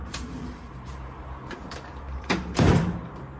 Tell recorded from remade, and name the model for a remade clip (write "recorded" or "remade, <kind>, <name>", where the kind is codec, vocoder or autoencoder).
remade, vocoder, BigVGAN v2